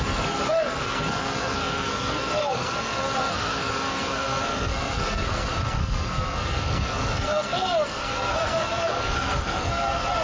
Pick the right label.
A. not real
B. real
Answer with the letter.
A